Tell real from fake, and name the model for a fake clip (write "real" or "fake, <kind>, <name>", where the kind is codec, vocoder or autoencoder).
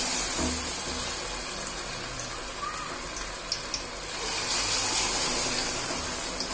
real